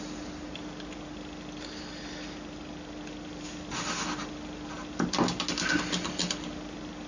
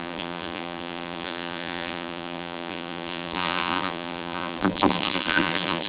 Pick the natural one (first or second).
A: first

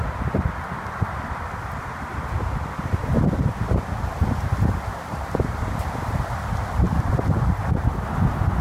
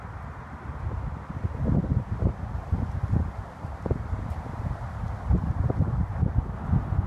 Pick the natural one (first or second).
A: second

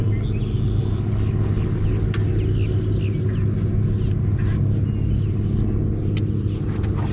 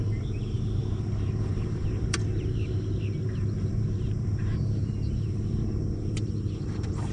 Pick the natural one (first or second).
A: first